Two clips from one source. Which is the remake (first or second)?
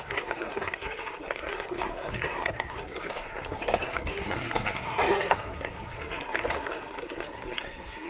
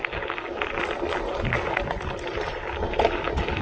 first